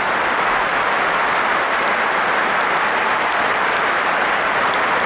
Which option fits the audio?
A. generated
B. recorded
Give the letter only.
B